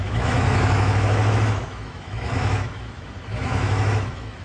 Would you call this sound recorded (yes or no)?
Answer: no